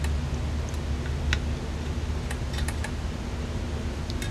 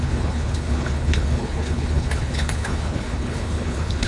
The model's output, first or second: second